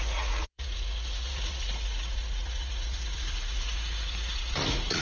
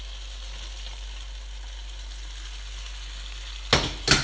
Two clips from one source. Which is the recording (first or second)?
second